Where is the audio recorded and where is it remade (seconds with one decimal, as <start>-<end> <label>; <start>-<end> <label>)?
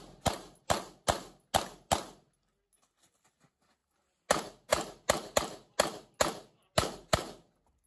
0.0-7.9 recorded